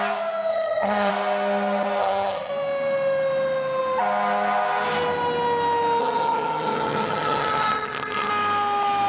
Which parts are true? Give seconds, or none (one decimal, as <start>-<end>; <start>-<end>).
0.0-0.5; 1.1-2.0; 2.5-6.0; 8.3-9.1